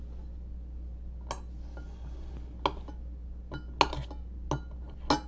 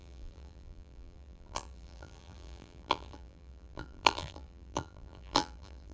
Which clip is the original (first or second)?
first